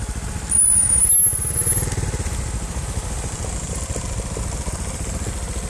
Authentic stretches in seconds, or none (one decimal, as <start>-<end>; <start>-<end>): 0.0-5.7